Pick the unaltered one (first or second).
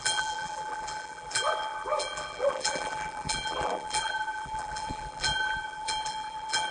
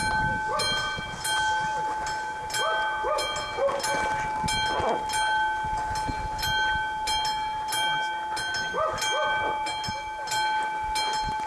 second